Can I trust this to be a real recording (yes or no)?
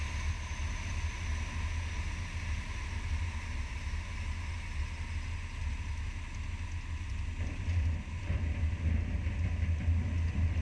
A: yes